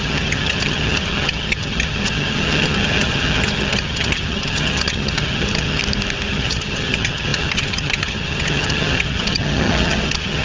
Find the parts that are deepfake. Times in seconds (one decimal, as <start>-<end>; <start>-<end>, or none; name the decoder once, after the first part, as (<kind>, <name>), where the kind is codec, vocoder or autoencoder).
0.0-5.8 (vocoder, HiFi-GAN); 6.3-10.4